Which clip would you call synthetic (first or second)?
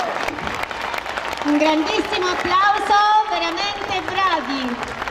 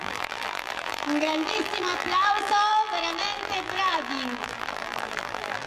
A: second